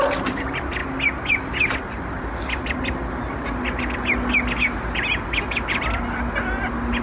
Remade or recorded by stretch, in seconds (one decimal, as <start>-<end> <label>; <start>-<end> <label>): 0.0-7.0 recorded